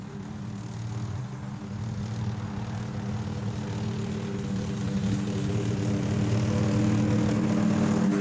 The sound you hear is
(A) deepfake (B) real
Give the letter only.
B